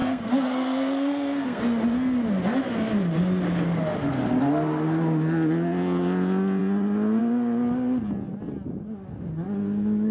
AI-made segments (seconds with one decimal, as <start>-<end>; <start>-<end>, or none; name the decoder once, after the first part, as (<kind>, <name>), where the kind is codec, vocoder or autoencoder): 0.0-1.6 (codec, SNAC)